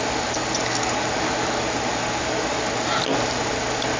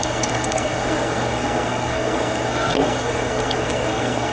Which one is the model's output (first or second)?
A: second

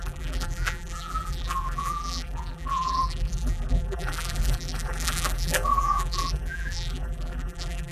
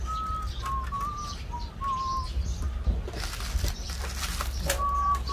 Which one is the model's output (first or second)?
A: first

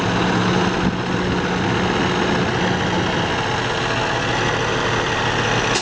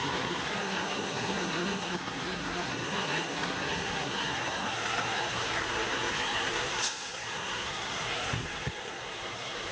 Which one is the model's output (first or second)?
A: second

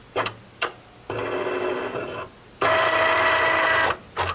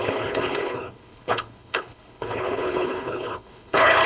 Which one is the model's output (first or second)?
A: second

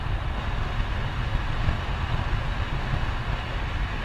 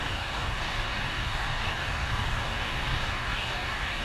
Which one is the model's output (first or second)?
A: second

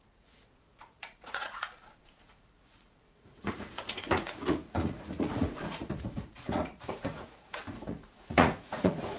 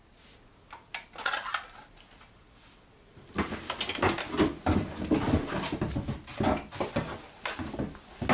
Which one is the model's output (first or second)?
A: first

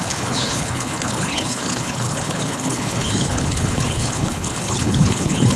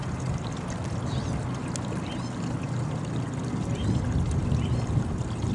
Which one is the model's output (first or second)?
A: first